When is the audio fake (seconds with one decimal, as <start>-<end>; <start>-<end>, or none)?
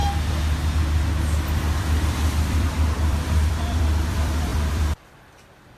1.8-5.8